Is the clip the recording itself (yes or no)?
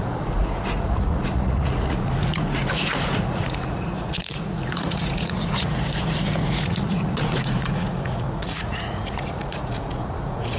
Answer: no